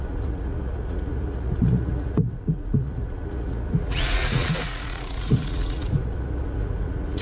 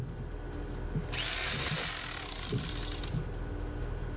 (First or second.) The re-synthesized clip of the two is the first